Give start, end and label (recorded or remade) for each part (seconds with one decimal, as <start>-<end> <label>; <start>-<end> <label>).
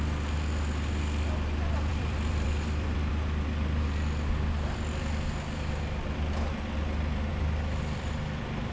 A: 0.0-1.9 recorded; 1.9-3.1 remade; 3.1-7.3 recorded; 7.3-8.1 remade; 8.1-8.7 recorded